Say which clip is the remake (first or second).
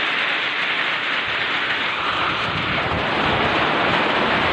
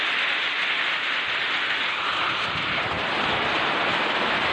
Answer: first